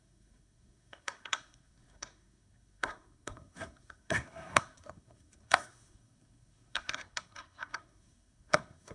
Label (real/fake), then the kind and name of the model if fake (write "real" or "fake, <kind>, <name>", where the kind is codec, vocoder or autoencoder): fake, codec, SNAC